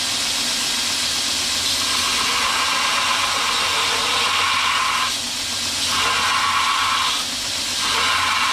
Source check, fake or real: real